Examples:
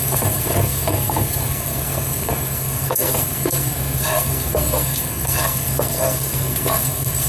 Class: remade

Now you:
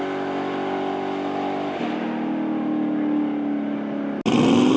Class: recorded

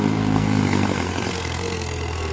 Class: remade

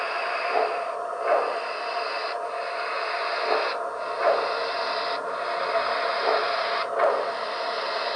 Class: recorded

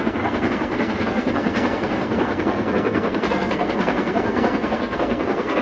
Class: remade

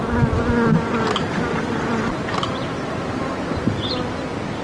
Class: recorded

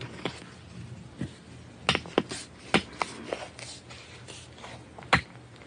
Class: recorded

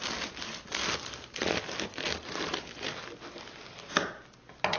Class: recorded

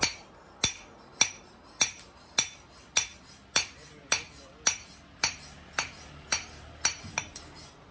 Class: recorded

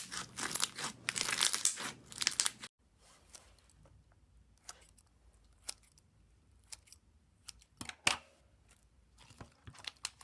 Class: recorded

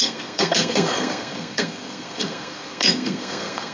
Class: remade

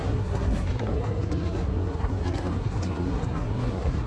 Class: remade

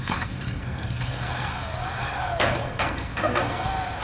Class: remade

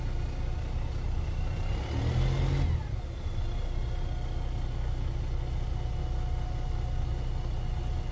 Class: recorded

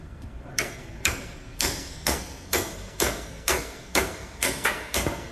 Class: remade